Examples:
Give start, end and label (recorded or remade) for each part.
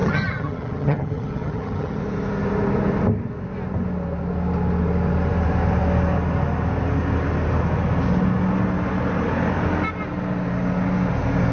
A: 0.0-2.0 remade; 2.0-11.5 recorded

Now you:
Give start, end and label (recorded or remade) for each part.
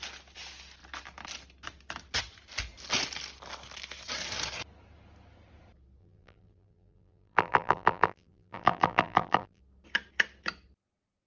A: 0.0-6.0 recorded; 6.0-9.6 remade; 9.6-11.3 recorded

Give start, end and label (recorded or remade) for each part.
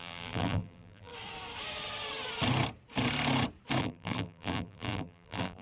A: 0.0-1.1 remade; 1.1-3.8 recorded; 3.8-5.6 remade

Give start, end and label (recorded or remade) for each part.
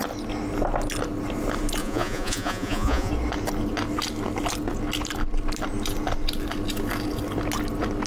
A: 0.0-1.8 recorded; 1.8-3.1 remade; 3.1-8.1 recorded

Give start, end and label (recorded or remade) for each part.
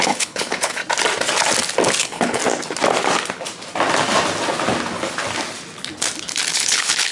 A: 0.0-0.8 remade; 0.8-2.0 recorded; 2.0-2.4 remade; 2.4-6.5 recorded; 6.5-7.1 remade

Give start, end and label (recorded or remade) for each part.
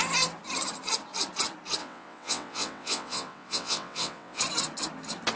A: 0.0-1.8 recorded; 1.8-4.4 remade; 4.4-5.4 recorded